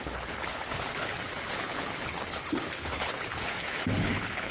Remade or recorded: remade